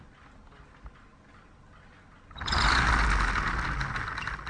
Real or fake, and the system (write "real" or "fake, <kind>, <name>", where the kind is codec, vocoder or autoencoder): real